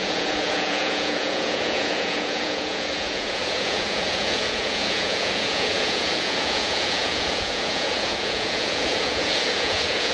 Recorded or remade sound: remade